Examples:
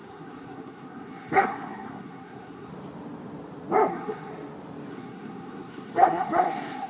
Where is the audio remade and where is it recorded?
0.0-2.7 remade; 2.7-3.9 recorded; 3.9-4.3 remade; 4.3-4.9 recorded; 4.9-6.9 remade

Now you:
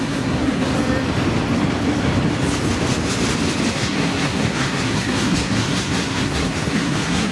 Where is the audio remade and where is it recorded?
0.0-0.7 remade; 0.7-3.7 recorded; 3.7-7.3 remade

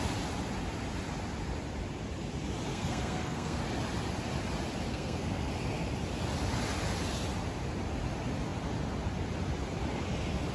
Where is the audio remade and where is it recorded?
0.0-2.7 recorded; 2.7-3.6 remade; 3.6-4.9 recorded; 4.9-5.5 remade; 5.5-10.5 recorded

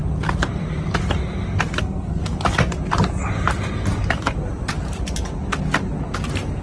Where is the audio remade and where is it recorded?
0.0-1.8 recorded; 1.8-2.2 remade; 2.2-6.6 recorded

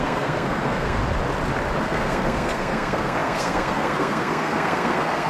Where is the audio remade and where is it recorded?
0.0-1.0 remade; 1.0-1.8 recorded; 1.8-5.3 remade

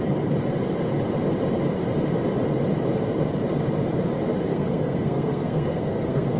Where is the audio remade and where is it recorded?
0.0-4.5 recorded; 4.5-6.4 remade

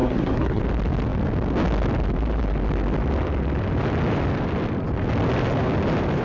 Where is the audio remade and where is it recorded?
0.0-0.6 remade; 0.6-6.2 recorded